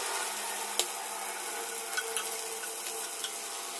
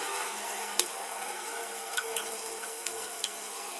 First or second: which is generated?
second